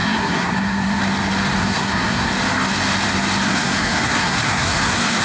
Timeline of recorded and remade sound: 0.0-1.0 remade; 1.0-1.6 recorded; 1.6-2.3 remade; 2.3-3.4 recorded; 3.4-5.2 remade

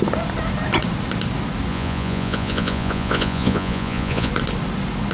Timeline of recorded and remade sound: 0.0-1.7 recorded; 1.7-4.3 remade; 4.3-5.1 recorded

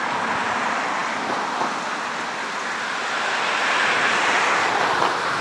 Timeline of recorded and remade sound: 0.0-5.4 recorded

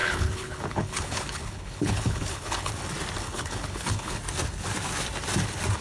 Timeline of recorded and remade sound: 0.0-2.7 remade; 2.7-3.2 recorded; 3.2-4.2 remade; 4.2-5.8 recorded

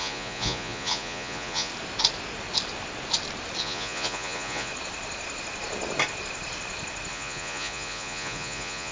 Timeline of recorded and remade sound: 0.0-1.7 remade; 1.7-3.6 recorded; 3.6-4.7 remade; 4.7-7.1 recorded; 7.1-8.9 remade

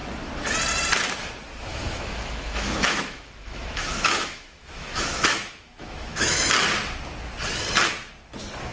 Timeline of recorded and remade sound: 0.0-1.7 recorded; 1.7-6.5 remade; 6.5-8.7 recorded